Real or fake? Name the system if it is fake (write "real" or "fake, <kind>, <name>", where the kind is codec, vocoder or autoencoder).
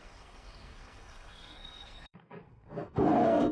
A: fake, codec, SNAC